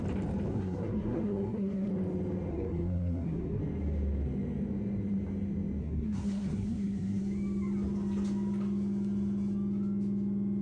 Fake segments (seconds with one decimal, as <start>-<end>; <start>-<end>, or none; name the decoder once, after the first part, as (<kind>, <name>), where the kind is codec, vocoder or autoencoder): 0.5-1.9 (codec, SNAC); 2.5-3.6; 5.8-7.2